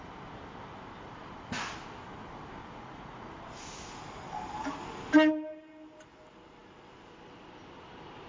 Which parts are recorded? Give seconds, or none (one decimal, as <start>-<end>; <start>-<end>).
0.0-2.6; 3.3-8.3